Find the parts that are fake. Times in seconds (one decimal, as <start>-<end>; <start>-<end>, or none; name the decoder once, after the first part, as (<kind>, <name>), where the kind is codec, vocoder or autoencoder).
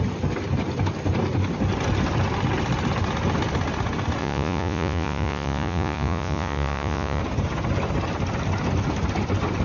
4.2-7.2 (vocoder, Vocos)